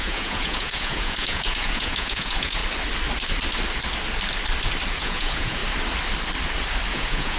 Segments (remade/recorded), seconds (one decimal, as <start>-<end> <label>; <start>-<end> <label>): 0.0-2.6 remade; 2.6-4.9 recorded; 4.9-5.6 remade; 5.6-6.9 recorded; 6.9-7.4 remade